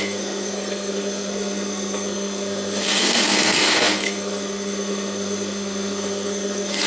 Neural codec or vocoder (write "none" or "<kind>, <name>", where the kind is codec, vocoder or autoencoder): codec, SNAC